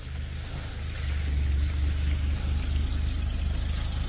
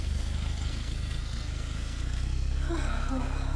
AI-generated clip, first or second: second